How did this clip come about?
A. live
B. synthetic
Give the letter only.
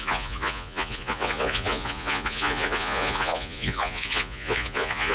B